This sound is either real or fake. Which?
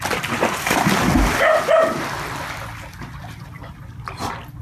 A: real